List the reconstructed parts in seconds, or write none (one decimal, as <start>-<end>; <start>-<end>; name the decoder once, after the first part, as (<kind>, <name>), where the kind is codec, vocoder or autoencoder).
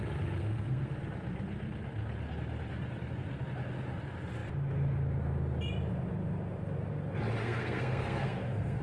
0.4-0.9 (codec, SNAC); 7.4-8.8